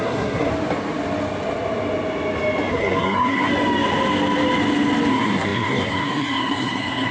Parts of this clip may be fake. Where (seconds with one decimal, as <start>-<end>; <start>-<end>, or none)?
0.0-0.5; 2.7-3.5; 5.1-7.1